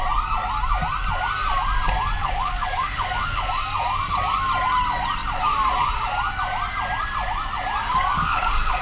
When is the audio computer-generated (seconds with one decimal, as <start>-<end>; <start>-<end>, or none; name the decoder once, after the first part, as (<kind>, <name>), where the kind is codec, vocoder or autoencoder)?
2.2-3.5 (codec, DAC); 7.9-8.8